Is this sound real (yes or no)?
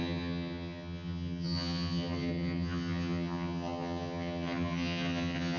no